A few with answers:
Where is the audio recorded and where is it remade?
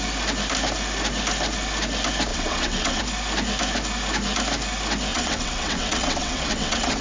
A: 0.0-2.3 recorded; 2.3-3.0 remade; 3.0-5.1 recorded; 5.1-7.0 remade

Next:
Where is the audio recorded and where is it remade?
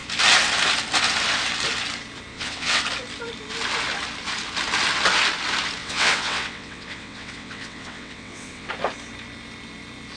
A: 0.0-2.3 recorded; 2.3-2.8 remade; 2.8-5.8 recorded; 5.8-8.7 remade; 8.7-10.2 recorded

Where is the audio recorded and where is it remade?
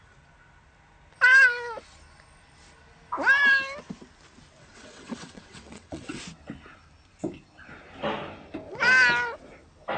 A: 0.0-4.6 recorded; 4.6-6.2 remade; 6.2-10.0 recorded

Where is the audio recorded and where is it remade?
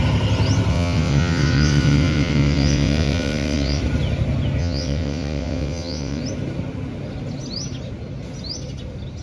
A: 0.0-0.7 recorded; 0.7-3.8 remade; 3.8-4.6 recorded; 4.6-6.2 remade; 6.2-9.2 recorded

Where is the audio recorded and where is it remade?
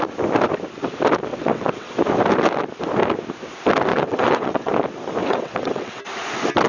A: 0.0-1.3 recorded; 1.3-1.9 remade; 1.9-3.9 recorded; 3.9-4.7 remade; 4.7-5.2 recorded; 5.2-6.0 remade; 6.0-6.7 recorded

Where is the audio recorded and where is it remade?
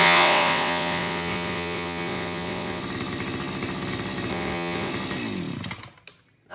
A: 0.0-2.8 remade; 2.8-4.3 recorded; 4.3-4.9 remade; 4.9-6.5 recorded